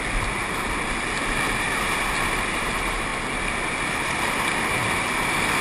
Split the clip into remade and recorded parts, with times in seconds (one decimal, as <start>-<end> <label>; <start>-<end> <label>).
0.0-5.6 recorded